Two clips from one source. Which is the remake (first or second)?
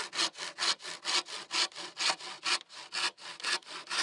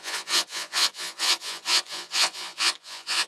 second